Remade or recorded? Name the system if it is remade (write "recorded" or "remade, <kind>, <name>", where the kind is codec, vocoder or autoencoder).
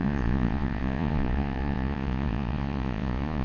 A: remade, vocoder, Vocos